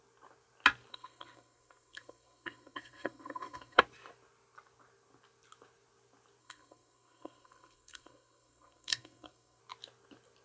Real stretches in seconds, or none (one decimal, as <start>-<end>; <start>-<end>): 0.0-0.9; 3.8-6.4; 9.6-10.4